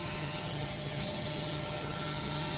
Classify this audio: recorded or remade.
remade